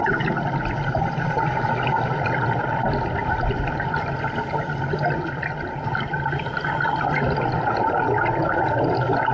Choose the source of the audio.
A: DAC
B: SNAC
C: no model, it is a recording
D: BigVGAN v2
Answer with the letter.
C